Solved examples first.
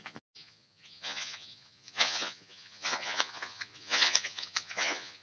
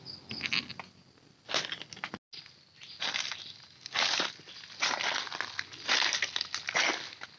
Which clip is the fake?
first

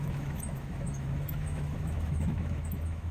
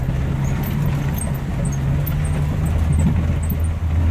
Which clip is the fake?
first